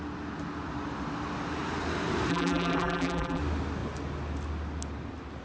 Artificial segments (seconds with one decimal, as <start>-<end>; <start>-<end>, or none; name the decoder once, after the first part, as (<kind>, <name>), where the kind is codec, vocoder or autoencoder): 2.3-3.4 (vocoder, BigVGAN v2)